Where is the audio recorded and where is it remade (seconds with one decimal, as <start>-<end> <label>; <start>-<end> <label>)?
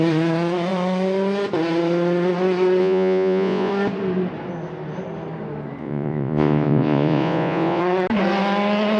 0.0-2.8 recorded; 2.8-3.7 remade; 3.7-5.8 recorded; 5.8-7.8 remade; 7.8-9.0 recorded